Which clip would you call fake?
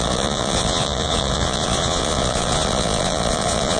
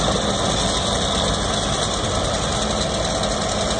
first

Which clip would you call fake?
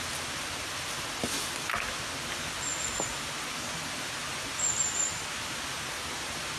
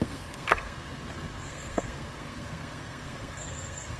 second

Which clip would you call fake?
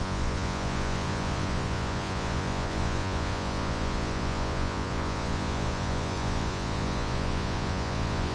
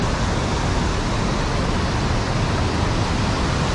first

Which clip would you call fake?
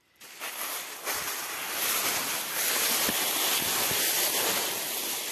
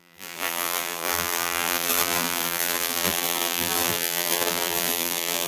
second